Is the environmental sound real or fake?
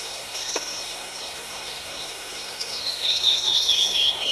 fake